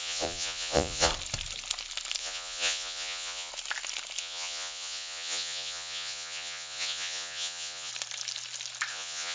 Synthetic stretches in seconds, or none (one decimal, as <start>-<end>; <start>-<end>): 0.0-1.1; 2.2-3.5; 4.2-7.9; 8.9-9.3